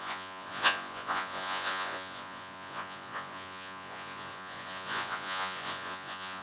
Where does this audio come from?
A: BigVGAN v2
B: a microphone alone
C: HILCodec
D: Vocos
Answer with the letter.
D